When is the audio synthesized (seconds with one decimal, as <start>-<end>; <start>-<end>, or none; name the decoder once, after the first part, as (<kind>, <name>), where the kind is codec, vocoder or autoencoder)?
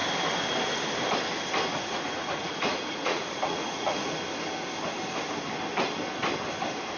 1.7-4.2 (vocoder, Vocos)